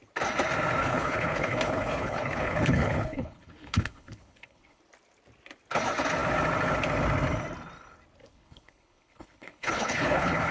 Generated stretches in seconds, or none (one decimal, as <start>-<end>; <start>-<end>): 0.8-4.8; 8.2-10.5